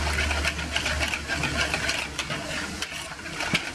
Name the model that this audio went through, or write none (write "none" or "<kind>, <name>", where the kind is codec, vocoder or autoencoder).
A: none